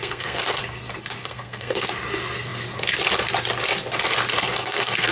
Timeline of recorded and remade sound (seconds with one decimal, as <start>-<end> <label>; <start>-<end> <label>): 0.0-0.6 remade; 0.6-1.2 recorded; 1.2-1.9 remade; 1.9-4.3 recorded; 4.3-5.1 remade